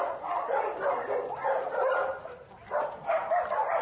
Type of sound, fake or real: fake